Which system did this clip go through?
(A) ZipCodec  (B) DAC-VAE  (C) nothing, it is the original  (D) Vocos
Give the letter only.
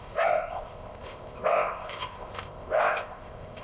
A